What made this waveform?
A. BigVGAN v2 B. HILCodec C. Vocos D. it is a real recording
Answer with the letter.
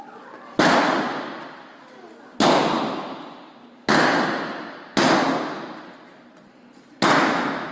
D